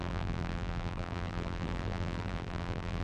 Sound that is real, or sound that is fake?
fake